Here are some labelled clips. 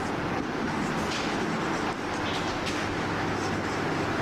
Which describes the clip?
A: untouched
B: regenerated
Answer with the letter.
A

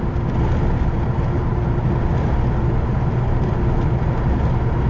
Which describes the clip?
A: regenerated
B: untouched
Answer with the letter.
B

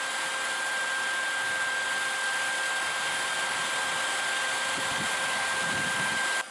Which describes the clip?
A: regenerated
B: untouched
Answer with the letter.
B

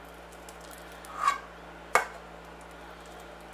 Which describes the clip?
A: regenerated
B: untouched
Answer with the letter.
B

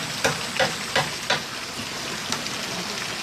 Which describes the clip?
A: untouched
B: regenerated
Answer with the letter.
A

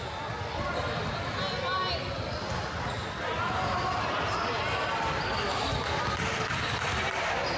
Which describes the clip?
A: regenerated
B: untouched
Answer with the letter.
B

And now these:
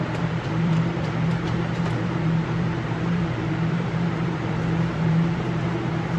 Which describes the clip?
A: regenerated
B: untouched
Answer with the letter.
A